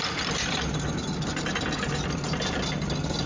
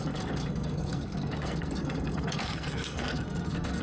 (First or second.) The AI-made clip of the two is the second